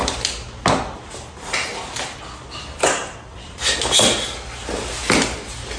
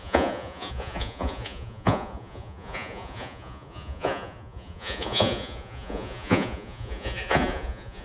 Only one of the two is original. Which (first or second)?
first